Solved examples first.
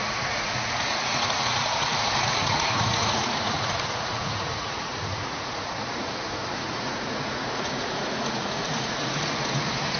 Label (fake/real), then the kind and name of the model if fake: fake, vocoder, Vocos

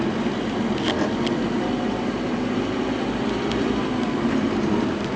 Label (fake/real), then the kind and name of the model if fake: real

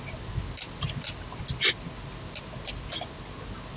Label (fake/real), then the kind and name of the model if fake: real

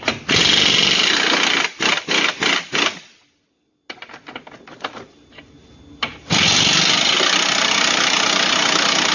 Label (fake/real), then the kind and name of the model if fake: real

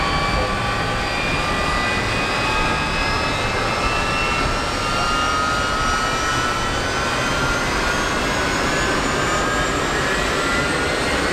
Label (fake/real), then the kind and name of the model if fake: real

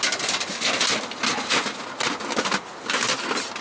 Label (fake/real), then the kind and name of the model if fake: real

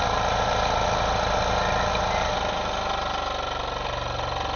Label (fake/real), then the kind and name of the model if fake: real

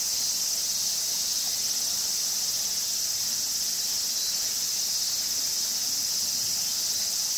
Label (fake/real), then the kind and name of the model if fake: real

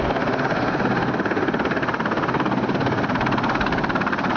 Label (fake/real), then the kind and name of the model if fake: real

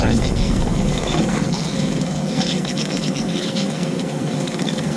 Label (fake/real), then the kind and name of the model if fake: fake, codec, SNAC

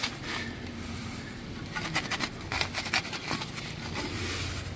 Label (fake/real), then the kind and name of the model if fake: real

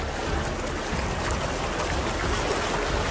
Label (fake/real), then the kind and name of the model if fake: real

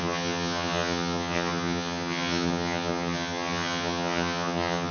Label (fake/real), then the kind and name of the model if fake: fake, vocoder, HiFi-GAN